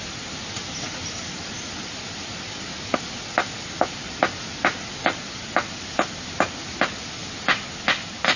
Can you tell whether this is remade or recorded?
recorded